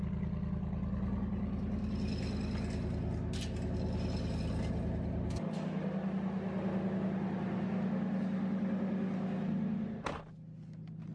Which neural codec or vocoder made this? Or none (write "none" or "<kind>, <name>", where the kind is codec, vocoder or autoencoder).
none